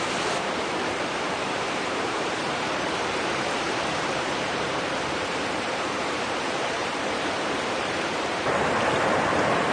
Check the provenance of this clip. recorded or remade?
remade